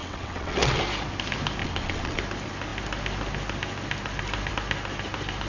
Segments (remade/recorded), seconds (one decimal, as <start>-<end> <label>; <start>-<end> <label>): 0.0-0.8 remade; 0.8-1.6 recorded; 1.6-2.2 remade; 2.2-5.5 recorded